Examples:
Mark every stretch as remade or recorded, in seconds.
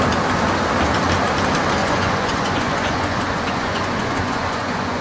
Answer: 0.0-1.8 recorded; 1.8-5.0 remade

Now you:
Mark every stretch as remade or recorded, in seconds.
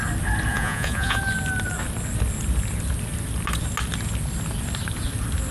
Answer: 0.0-0.5 recorded; 0.5-1.2 remade; 1.2-5.5 recorded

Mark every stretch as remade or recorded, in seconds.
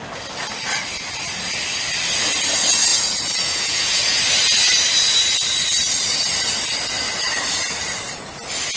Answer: 0.0-2.9 recorded; 2.9-4.2 remade; 4.2-8.8 recorded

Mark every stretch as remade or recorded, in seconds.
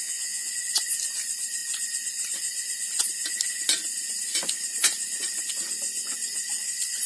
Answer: 0.0-0.5 remade; 0.5-7.1 recorded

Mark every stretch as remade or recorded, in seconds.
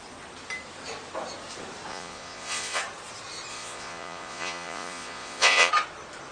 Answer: 0.0-1.9 recorded; 1.9-2.8 remade; 2.8-3.5 recorded; 3.5-5.7 remade; 5.7-6.3 recorded